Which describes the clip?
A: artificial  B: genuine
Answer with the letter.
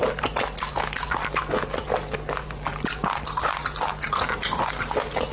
B